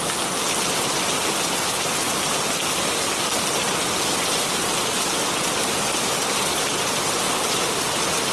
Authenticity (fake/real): real